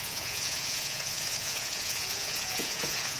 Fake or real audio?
fake